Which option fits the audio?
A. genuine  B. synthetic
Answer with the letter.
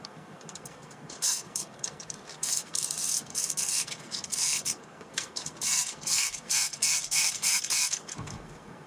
B